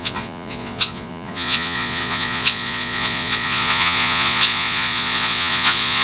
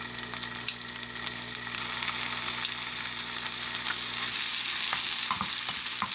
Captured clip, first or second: second